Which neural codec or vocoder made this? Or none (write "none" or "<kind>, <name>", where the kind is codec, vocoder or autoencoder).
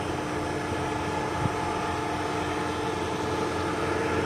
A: none